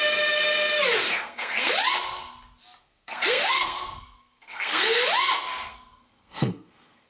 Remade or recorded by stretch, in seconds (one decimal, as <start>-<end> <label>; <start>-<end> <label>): 0.0-1.1 recorded; 1.1-1.7 remade; 1.7-2.8 recorded; 2.8-5.0 remade; 5.0-5.7 recorded; 5.7-7.1 remade